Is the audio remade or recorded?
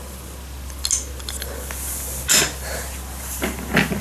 recorded